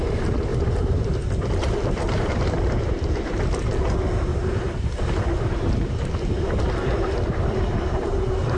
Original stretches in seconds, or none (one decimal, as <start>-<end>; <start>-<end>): 0.0-0.5; 1.1-1.6; 3.7-4.3; 6.6-8.6